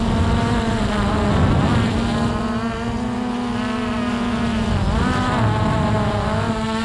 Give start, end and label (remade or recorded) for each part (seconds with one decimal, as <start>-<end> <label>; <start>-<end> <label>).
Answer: 0.0-6.8 recorded